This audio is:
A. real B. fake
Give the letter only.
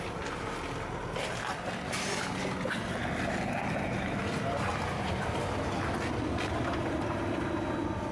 A